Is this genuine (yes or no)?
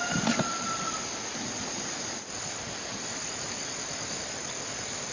yes